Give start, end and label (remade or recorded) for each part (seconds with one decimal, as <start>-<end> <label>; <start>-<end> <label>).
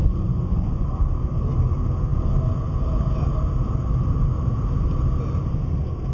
0.0-0.9 remade; 0.9-6.1 recorded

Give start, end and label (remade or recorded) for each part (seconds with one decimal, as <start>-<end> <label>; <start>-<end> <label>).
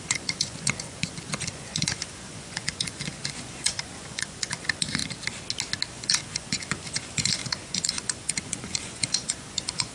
0.0-5.0 remade; 5.0-5.9 recorded; 5.9-9.9 remade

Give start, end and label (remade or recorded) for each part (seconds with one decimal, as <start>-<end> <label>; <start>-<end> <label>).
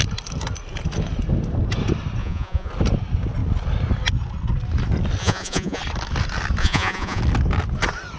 0.0-2.2 recorded; 2.2-2.7 remade; 2.7-5.2 recorded; 5.2-5.8 remade; 5.8-6.6 recorded; 6.6-7.2 remade; 7.2-8.2 recorded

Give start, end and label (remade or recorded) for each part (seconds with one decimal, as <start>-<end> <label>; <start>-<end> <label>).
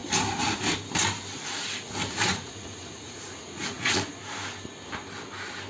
0.0-2.3 recorded; 2.3-4.2 remade; 4.2-5.7 recorded